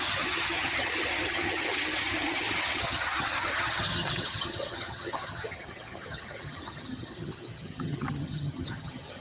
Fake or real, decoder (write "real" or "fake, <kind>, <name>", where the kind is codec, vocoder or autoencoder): fake, vocoder, HiFi-GAN